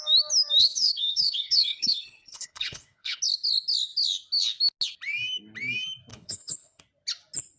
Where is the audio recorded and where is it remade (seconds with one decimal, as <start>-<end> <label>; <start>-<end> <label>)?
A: 0.0-0.6 recorded; 0.6-3.2 remade; 3.2-6.1 recorded; 6.1-6.8 remade; 6.8-7.6 recorded